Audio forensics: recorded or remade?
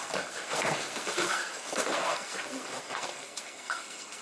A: remade